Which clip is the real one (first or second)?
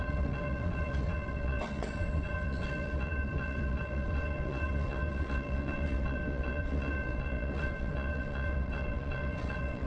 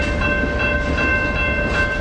second